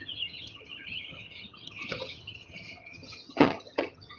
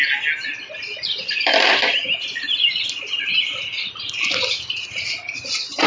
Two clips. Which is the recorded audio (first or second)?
second